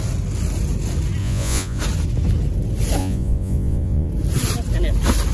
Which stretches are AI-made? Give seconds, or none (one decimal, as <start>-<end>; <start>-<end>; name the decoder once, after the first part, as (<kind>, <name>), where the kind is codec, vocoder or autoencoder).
1.2-1.8 (vocoder, Vocos); 3.0-4.1